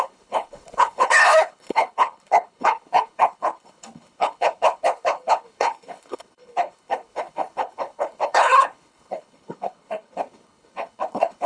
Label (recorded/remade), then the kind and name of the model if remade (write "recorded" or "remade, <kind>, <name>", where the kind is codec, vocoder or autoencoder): remade, codec, HILCodec